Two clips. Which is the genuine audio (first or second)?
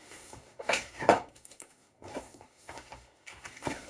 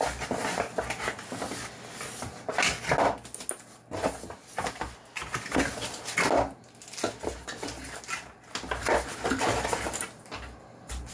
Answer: second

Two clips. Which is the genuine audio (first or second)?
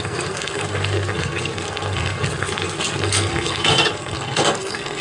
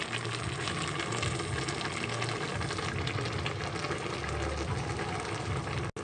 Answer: second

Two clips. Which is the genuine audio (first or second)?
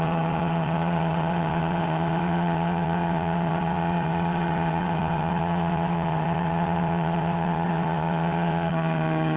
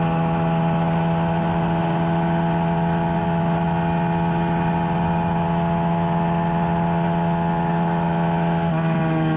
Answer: second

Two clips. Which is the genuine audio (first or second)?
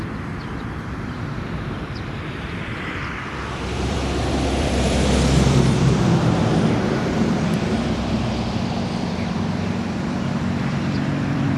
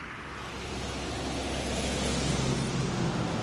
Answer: second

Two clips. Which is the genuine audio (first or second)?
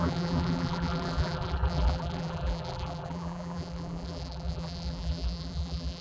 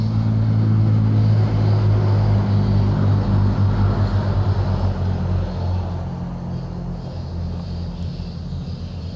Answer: second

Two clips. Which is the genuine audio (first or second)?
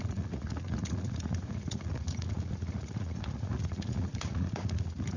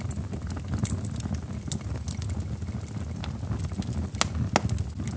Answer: second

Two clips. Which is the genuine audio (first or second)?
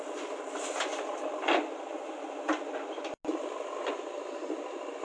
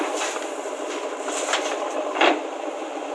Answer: first